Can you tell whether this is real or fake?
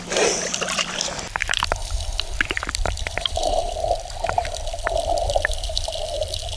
fake